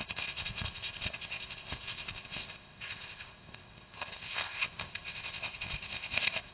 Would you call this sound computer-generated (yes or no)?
yes